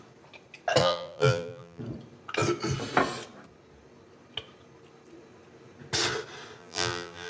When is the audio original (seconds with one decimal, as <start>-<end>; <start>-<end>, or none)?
0.0-0.8; 1.8-6.6